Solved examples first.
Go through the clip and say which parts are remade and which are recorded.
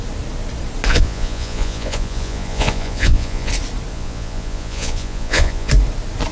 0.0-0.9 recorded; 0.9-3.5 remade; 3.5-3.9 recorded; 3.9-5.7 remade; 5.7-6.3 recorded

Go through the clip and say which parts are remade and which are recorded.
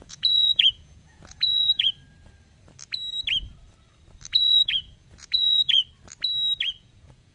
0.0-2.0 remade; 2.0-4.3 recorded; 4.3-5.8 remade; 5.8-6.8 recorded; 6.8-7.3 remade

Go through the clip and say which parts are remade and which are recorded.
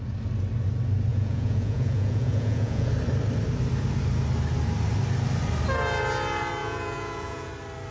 0.0-1.1 recorded; 1.1-2.9 remade; 2.9-6.6 recorded; 6.6-7.5 remade; 7.5-7.9 recorded